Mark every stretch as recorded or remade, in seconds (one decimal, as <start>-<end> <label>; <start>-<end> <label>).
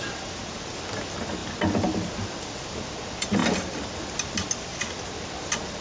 0.0-5.8 recorded